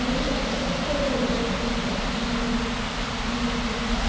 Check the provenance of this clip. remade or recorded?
recorded